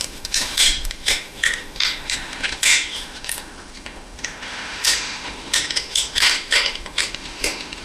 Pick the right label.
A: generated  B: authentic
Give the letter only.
A